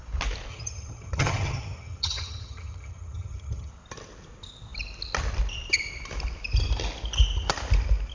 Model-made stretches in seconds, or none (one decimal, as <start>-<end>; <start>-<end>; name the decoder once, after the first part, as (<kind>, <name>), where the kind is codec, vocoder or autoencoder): 0.5-3.7 (vocoder, HiFi-GAN)